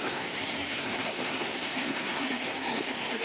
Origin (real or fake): fake